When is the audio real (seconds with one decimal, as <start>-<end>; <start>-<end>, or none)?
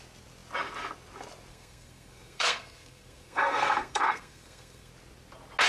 0.0-1.5; 4.9-5.7